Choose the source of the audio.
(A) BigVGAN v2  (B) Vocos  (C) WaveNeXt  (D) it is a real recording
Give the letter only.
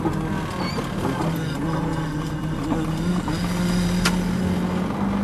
D